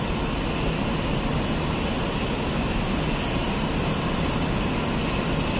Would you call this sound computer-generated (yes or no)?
no